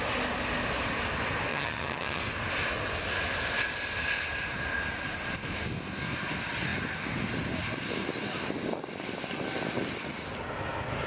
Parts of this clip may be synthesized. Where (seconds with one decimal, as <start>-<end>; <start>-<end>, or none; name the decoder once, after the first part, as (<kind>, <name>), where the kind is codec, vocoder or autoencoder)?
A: 1.5-2.2 (vocoder, HiFi-GAN)